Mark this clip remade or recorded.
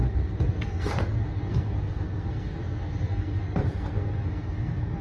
remade